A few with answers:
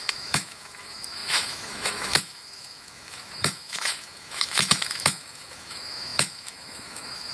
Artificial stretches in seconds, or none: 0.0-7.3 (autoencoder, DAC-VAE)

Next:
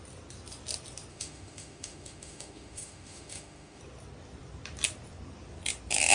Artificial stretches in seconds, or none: 1.1-3.8 (autoencoder, DAC-VAE)